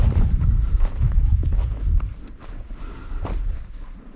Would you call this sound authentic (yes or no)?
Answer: no